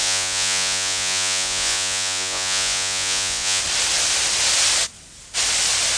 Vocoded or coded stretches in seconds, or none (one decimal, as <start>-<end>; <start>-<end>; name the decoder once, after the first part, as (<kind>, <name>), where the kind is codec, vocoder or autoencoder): 0.0-3.6 (vocoder, Vocos)